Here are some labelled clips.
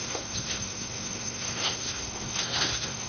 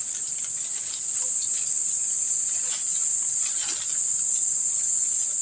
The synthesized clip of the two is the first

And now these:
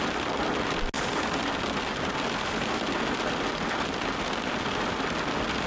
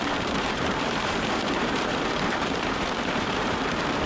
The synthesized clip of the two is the second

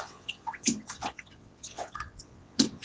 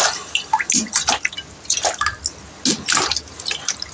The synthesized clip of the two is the first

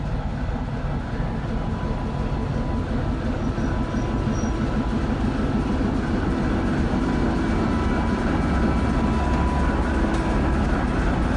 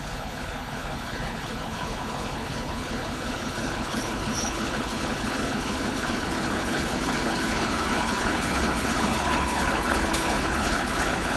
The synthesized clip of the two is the second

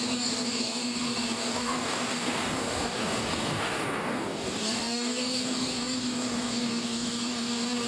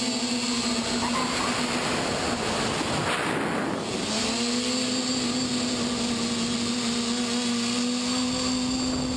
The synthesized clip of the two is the first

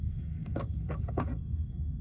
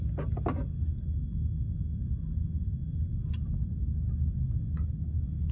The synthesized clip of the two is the first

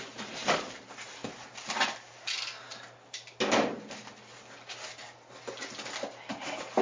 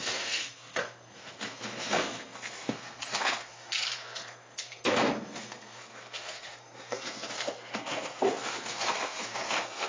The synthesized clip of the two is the second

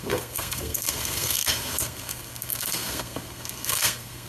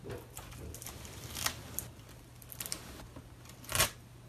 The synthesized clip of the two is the first